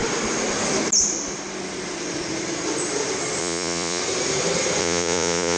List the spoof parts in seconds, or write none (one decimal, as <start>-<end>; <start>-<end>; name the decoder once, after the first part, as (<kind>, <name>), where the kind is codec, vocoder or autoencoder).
3.4-4.0 (vocoder, Vocos); 4.8-5.6